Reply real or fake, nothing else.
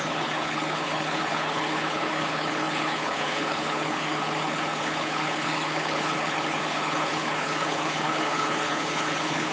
fake